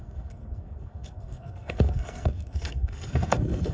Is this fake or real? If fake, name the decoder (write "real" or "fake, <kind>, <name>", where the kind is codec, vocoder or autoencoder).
fake, codec, SNAC